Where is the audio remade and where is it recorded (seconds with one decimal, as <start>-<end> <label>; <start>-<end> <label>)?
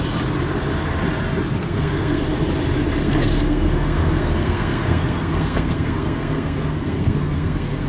0.0-1.6 recorded; 1.6-2.2 remade; 2.2-3.0 recorded; 3.0-7.9 remade